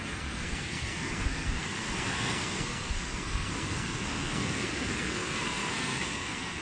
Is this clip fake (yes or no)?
yes